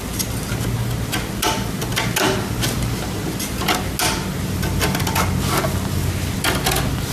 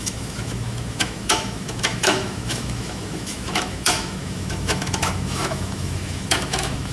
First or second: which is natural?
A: first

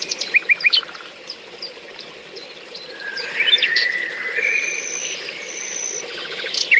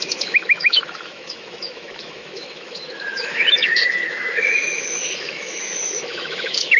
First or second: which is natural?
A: first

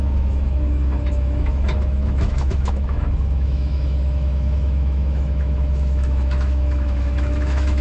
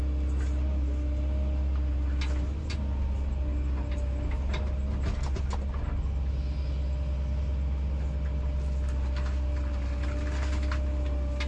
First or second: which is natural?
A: second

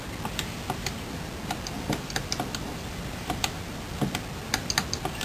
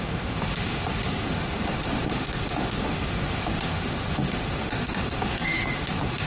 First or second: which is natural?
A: first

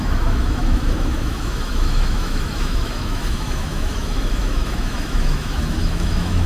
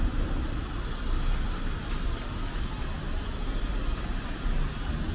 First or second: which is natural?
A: second